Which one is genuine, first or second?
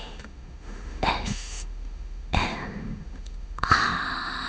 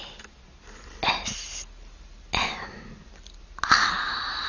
second